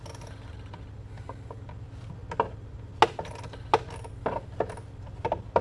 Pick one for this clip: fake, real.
real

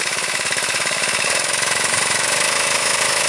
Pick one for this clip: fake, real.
fake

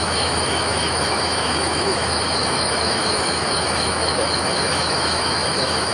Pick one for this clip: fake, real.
fake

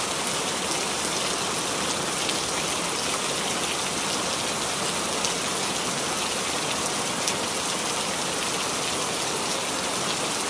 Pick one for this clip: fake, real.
real